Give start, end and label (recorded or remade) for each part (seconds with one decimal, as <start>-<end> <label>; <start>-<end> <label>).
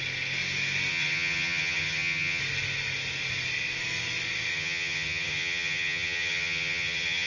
0.0-0.9 recorded; 0.9-2.4 remade; 2.4-4.5 recorded; 4.5-7.3 remade